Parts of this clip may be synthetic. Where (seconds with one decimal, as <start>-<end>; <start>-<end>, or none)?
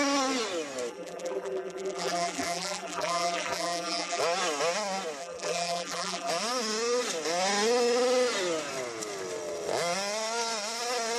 0.9-4.2; 5.2-6.3